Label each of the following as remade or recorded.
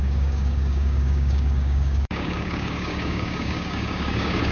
remade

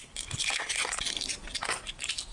recorded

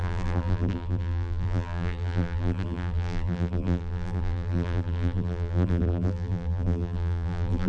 remade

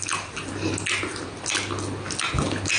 recorded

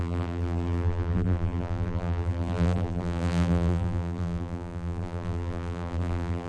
remade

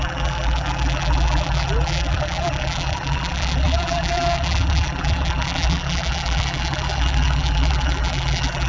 remade